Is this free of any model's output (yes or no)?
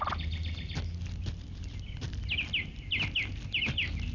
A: yes